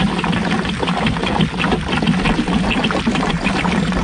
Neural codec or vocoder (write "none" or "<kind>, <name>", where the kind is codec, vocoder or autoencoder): none